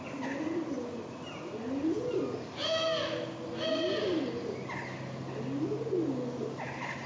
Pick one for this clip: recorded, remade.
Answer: recorded